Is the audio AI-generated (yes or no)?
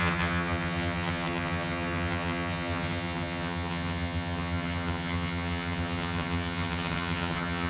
yes